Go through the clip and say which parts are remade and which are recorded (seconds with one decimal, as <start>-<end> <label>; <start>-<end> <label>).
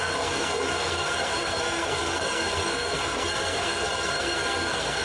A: 0.0-5.0 remade